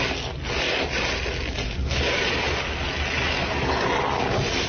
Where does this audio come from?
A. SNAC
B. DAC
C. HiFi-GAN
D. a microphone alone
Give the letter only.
D